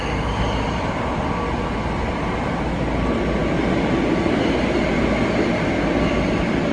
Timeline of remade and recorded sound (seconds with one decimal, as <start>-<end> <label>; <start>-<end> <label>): 0.0-6.7 recorded